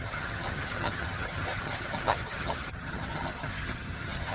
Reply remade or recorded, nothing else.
remade